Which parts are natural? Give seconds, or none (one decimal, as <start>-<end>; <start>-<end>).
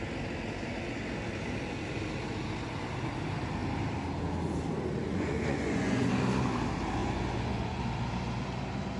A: 0.0-5.1; 6.1-7.0; 7.8-9.0